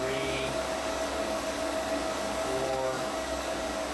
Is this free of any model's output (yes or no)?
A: no